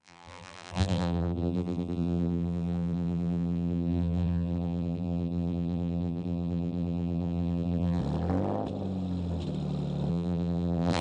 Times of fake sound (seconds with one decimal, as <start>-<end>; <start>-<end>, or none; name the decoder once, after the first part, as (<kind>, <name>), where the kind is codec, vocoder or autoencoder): 0.0-8.0 (vocoder, BigVGAN v2); 10.1-11.0

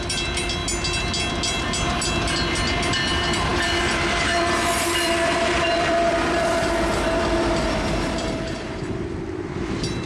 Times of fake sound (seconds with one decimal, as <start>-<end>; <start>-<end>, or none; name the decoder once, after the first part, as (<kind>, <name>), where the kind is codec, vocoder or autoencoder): 0.0-0.6 (vocoder, BigVGAN v2); 2.9-10.1

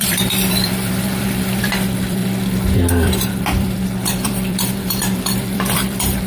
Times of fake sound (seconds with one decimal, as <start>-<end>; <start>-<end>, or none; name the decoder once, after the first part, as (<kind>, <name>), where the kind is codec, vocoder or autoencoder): 0.0-2.2 (vocoder, BigVGAN v2); 2.9-6.3

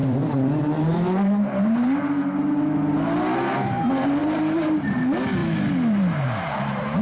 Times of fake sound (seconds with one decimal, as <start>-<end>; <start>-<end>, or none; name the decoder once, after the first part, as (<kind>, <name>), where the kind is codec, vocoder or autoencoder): 0.0-2.0 (vocoder, BigVGAN v2); 4.2-4.9; 5.4-7.0

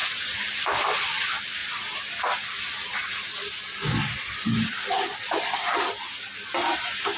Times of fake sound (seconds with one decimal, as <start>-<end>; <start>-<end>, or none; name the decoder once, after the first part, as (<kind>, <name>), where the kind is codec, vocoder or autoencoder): none

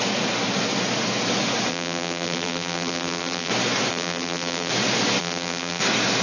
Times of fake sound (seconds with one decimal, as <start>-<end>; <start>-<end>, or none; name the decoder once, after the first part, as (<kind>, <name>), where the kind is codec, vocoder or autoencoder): 1.7-3.5 (vocoder, BigVGAN v2); 3.9-4.7; 5.2-5.8

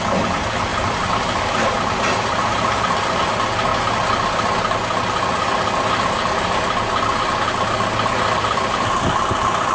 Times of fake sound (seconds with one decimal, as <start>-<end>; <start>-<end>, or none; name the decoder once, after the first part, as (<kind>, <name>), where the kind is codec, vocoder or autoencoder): 0.7-3.3 (vocoder, BigVGAN v2)